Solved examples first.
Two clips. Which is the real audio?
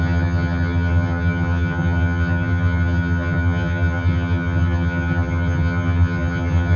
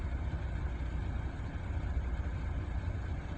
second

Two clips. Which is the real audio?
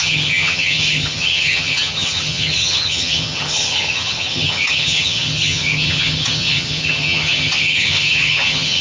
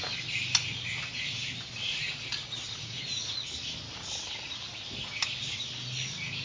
second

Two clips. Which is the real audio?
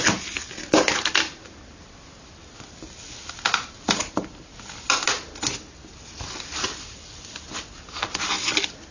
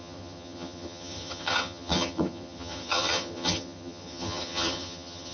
first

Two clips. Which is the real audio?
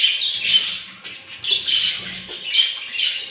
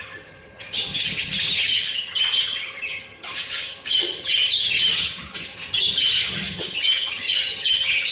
first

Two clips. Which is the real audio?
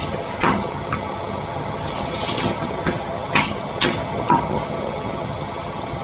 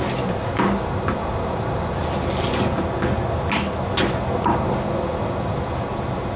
second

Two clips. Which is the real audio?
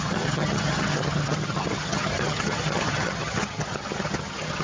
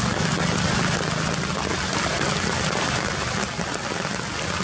second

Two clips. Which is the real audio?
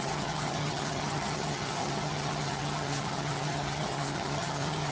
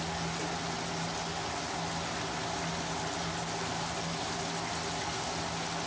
second